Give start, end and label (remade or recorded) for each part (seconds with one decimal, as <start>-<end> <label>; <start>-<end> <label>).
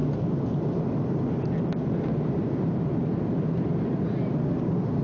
0.0-5.0 recorded